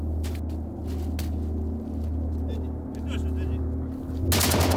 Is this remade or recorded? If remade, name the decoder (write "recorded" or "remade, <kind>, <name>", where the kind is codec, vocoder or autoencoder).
recorded